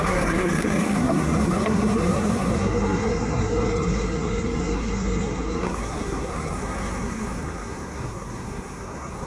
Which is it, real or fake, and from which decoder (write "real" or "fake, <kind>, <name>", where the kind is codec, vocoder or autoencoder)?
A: fake, codec, SNAC